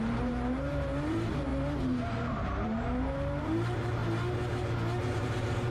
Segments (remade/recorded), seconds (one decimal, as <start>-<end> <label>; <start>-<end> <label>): 0.0-1.5 remade; 1.5-2.6 recorded; 2.6-4.0 remade; 4.0-5.1 recorded; 5.1-5.7 remade